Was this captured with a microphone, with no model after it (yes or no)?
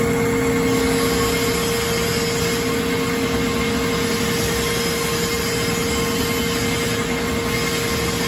yes